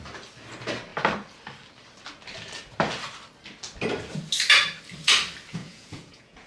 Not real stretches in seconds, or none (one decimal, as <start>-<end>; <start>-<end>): 5.6-6.5